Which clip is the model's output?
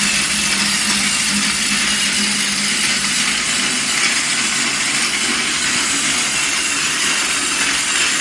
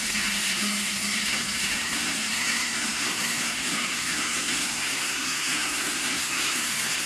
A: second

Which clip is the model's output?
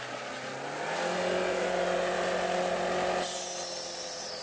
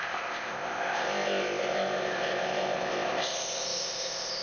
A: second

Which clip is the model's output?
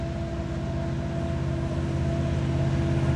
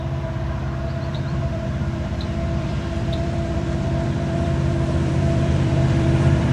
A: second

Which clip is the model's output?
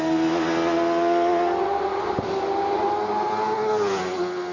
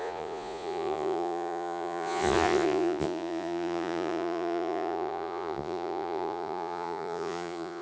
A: second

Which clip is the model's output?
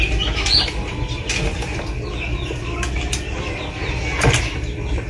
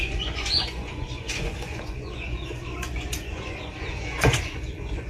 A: second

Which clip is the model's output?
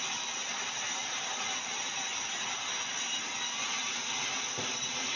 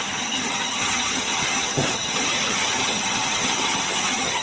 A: second